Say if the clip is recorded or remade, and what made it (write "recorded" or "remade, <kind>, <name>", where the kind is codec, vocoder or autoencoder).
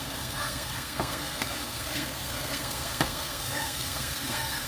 remade, codec, SNAC